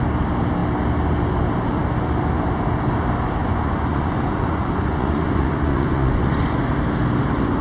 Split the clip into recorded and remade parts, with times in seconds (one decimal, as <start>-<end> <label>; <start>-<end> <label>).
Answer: 0.0-3.4 recorded; 3.4-6.7 remade; 6.7-7.6 recorded